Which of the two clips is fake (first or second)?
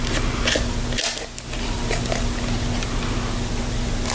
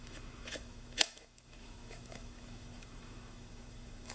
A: second